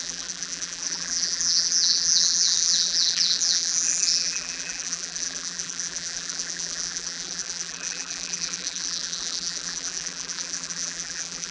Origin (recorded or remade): remade